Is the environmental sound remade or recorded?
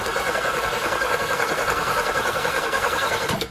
remade